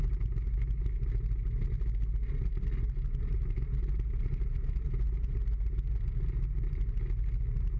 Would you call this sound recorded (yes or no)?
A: yes